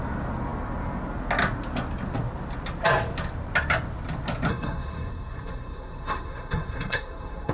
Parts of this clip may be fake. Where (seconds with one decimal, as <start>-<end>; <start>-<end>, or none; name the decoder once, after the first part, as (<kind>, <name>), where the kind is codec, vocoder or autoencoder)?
4.5-7.5 (codec, SNAC)